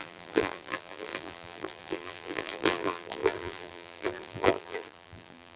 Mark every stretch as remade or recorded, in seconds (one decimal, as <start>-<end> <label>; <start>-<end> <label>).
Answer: 0.0-5.6 remade

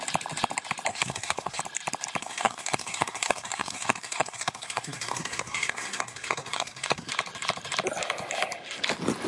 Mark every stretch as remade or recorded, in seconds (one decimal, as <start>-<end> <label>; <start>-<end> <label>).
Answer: 0.0-0.9 recorded; 0.9-1.6 remade; 1.6-2.2 recorded; 2.2-7.1 remade; 7.1-9.3 recorded

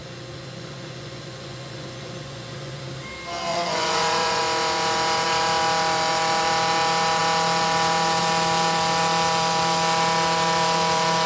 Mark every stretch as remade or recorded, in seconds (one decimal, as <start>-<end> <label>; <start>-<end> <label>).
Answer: 0.0-2.8 remade; 2.8-3.5 recorded; 3.5-4.4 remade; 4.4-11.3 recorded

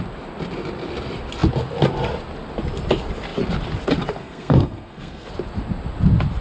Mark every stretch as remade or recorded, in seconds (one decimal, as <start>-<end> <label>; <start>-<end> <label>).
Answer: 0.0-4.2 recorded; 4.2-5.3 remade; 5.3-6.4 recorded

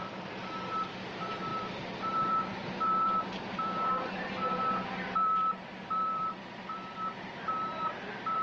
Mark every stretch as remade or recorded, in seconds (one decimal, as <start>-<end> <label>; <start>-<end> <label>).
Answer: 0.0-0.4 remade; 0.4-1.0 recorded; 1.0-8.4 remade